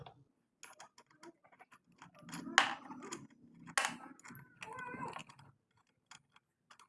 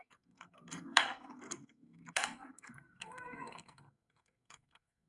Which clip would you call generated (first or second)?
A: second